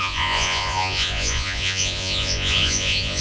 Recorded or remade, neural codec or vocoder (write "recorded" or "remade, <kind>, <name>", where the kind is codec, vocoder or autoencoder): remade, vocoder, Vocos